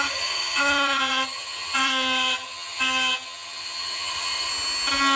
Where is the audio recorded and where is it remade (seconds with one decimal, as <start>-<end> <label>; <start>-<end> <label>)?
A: 0.0-4.5 remade; 4.5-5.2 recorded